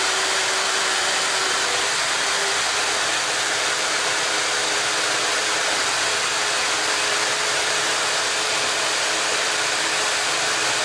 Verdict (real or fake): fake